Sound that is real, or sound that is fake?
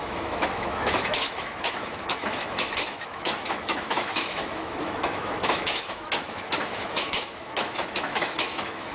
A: fake